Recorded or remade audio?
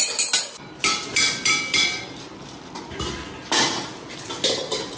recorded